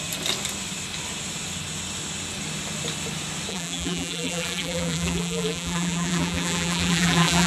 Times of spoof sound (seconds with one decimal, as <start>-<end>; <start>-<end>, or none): 3.5-7.5